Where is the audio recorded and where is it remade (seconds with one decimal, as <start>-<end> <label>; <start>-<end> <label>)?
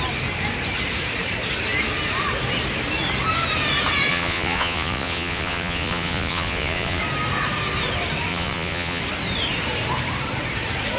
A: 0.0-4.1 recorded; 4.1-7.0 remade; 7.0-8.3 recorded; 8.3-9.0 remade; 9.0-11.0 recorded